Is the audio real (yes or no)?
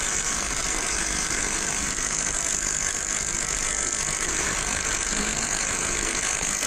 no